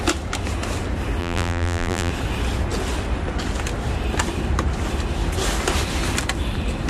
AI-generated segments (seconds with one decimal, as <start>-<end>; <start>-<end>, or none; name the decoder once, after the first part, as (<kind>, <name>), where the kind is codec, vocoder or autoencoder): 1.2-2.1 (vocoder, BigVGAN v2)